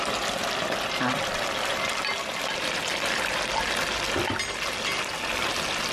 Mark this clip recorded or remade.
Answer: recorded